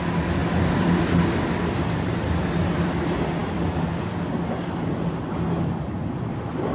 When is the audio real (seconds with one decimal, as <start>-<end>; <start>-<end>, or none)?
0.0-6.7